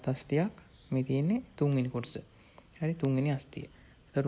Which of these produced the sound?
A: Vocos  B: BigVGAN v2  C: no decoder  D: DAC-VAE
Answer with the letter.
C